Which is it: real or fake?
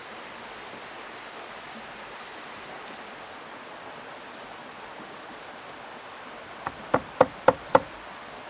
real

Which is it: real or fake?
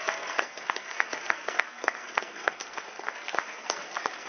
fake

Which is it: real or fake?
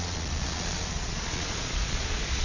fake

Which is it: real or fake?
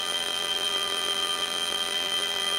fake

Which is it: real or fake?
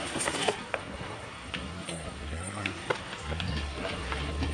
fake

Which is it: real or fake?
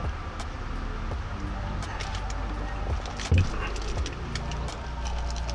real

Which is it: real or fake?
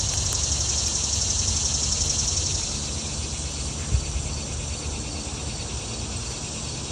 real